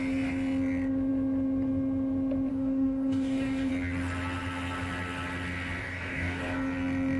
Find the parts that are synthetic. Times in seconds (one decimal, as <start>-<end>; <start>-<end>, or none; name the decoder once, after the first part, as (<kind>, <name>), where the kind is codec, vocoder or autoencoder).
2.5-3.7 (codec, DAC); 5.8-6.4